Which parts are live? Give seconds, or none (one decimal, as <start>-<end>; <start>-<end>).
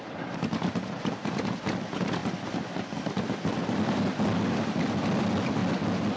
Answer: 0.0-6.2